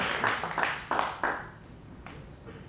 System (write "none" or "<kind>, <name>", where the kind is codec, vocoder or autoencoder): none